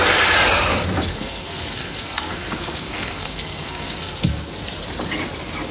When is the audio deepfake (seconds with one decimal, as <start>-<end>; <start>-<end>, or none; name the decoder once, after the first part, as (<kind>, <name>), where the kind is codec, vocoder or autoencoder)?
1.1-4.5 (codec, SNAC)